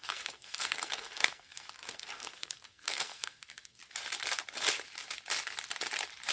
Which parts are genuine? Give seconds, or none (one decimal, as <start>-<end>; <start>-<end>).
3.8-6.3